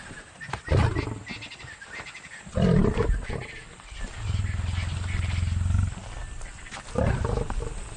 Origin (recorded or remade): recorded